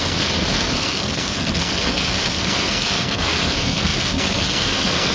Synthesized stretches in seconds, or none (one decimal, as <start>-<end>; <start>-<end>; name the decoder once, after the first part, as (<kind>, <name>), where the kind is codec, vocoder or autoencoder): 0.0-5.1 (codec, SNAC)